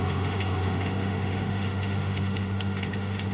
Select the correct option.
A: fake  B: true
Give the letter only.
A